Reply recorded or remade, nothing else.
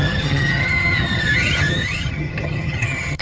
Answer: remade